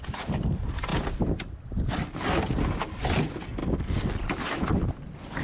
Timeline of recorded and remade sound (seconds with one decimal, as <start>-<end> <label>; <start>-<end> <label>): 0.0-5.4 recorded